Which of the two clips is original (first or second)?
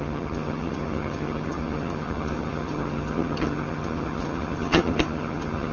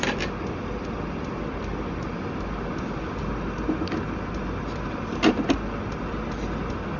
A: second